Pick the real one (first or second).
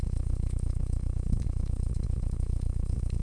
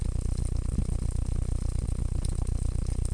second